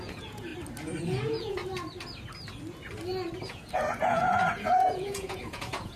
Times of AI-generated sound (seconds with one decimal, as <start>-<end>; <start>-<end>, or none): 0.0-0.5; 1.0-1.6; 3.5-6.0